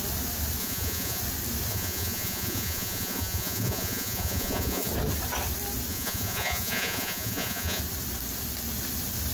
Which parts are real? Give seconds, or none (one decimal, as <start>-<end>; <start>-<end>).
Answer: 0.0-0.6; 1.2-1.7; 4.9-5.9; 7.8-9.3